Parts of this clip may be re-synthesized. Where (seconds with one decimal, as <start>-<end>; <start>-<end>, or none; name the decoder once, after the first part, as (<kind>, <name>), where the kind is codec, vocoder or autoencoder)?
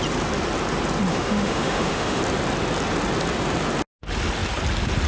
1.1-2.2 (autoencoder, DAC-VAE)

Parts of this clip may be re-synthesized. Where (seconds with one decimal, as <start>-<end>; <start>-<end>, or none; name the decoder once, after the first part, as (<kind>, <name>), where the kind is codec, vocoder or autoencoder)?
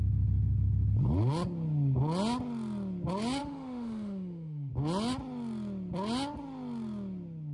3.4-4.7 (autoencoder, DAC-VAE)